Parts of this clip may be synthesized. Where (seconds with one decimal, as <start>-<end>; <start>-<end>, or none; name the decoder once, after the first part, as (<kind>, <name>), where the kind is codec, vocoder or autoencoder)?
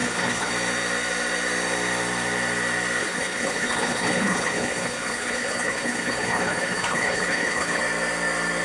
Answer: 0.0-0.5 (codec, HILCodec); 3.0-7.8